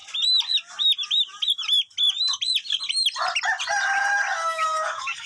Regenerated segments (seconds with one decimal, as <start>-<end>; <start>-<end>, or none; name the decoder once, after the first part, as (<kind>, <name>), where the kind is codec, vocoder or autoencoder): 4.4-5.3 (codec, DAC)